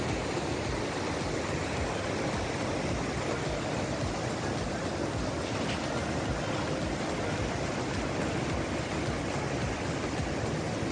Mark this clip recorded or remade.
recorded